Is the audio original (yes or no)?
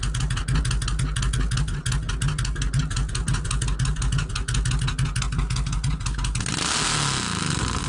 yes